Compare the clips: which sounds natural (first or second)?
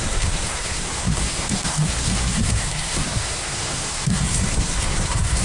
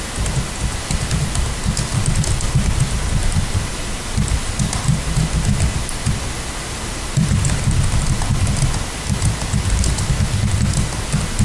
second